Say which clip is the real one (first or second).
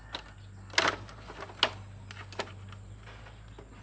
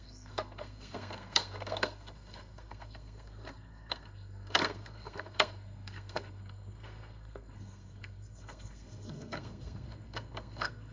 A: first